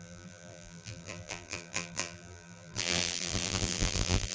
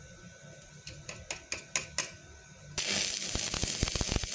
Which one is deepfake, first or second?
first